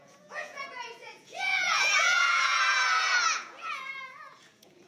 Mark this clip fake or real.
fake